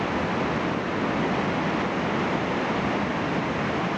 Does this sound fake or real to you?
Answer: real